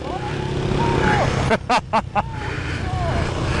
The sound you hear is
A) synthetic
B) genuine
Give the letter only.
B